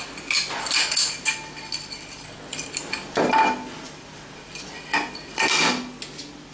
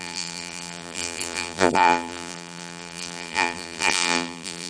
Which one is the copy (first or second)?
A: second